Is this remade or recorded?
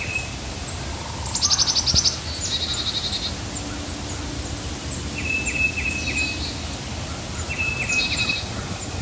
recorded